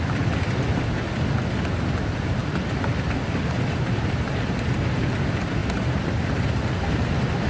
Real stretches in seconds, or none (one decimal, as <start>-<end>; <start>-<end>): 0.0-7.5